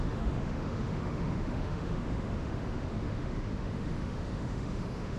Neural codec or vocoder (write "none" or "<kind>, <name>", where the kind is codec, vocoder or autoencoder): autoencoder, DAC-VAE